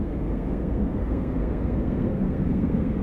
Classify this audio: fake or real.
fake